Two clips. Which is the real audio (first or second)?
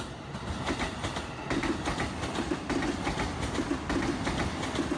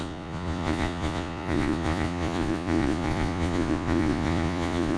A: first